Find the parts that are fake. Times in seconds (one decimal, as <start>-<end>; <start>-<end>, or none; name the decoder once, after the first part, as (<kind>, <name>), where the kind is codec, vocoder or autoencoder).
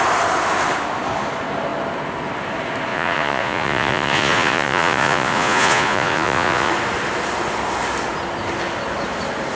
2.9-6.7 (vocoder, Vocos)